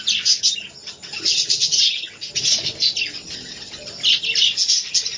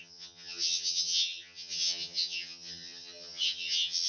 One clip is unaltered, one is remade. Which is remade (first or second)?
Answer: second